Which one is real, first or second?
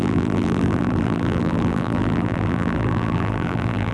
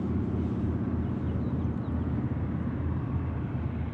second